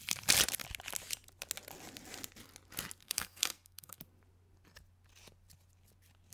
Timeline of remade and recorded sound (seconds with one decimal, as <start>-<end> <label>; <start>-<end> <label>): 0.0-3.0 recorded; 3.0-4.0 remade; 4.0-6.3 recorded